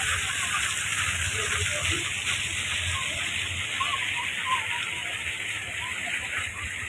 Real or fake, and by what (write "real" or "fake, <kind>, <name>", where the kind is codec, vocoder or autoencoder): real